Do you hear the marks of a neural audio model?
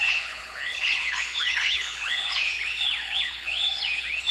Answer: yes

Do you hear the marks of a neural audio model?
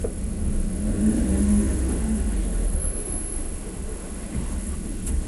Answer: yes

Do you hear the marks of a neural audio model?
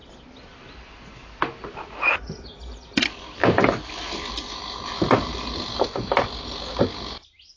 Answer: no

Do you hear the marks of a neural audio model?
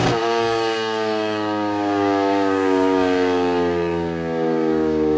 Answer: yes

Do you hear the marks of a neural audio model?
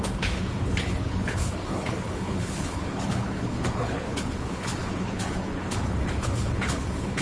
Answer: yes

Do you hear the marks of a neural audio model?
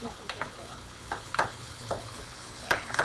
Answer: yes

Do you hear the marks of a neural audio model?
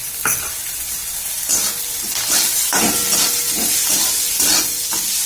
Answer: no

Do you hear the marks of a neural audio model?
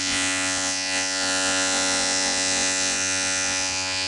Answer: yes